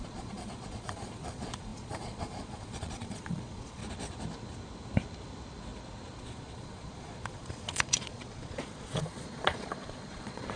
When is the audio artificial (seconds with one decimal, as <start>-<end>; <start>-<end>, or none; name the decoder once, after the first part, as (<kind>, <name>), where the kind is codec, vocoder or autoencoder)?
0.0-3.8 (vocoder, Vocos); 6.2-10.6